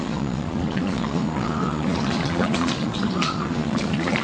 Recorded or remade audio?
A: remade